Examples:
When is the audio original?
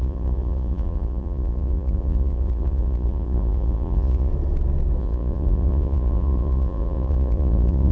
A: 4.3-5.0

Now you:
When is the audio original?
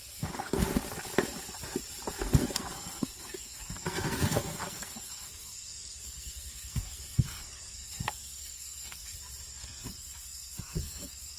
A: 0.7-2.2; 9.1-9.6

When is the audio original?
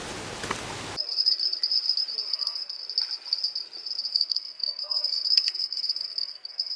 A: 0.0-2.3; 2.8-4.1